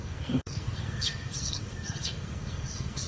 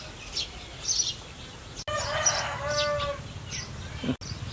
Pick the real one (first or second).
second